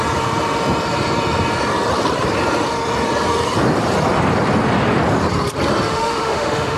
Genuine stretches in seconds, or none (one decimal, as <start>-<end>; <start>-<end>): 0.0-5.9